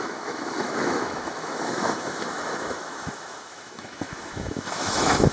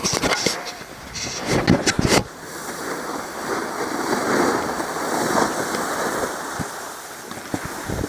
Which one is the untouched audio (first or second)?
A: second